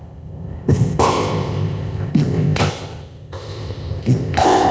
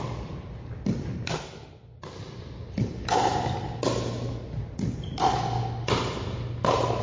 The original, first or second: second